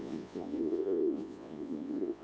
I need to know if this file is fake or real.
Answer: fake